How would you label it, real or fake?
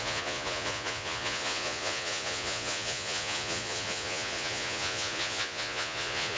fake